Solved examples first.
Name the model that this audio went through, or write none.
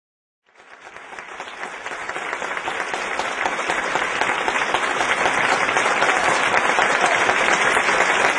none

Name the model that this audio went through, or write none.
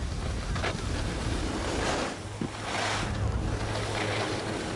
none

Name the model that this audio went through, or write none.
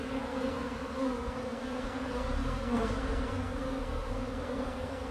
codec, SNAC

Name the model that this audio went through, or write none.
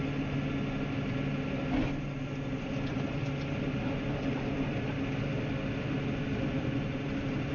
none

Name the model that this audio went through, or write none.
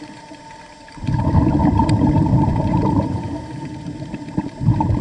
vocoder, BigVGAN v2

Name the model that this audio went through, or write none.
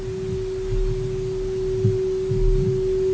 none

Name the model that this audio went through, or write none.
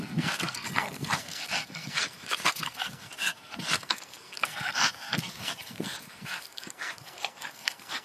codec, SNAC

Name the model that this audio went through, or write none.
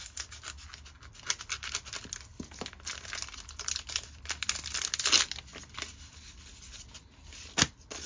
none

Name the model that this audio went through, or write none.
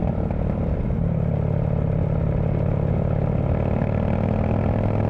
none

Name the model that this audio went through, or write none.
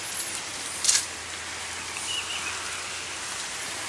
none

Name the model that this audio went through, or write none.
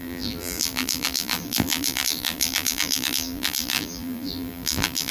vocoder, BigVGAN v2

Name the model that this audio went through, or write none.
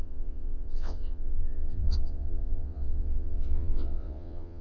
vocoder, WaveNeXt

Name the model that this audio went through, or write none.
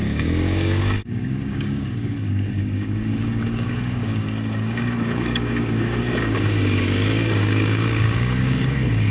codec, DAC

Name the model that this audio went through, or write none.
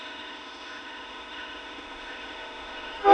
autoencoder, DAC-VAE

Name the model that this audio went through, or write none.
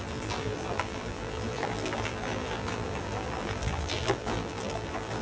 vocoder, BigVGAN v2